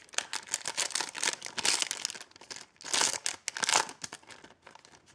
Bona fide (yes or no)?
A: yes